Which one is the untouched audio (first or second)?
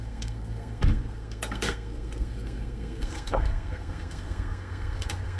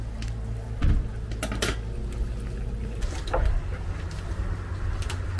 second